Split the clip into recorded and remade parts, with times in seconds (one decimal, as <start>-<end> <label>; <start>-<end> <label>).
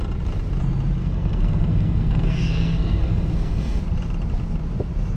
0.0-1.0 recorded; 1.0-3.8 remade; 3.8-5.2 recorded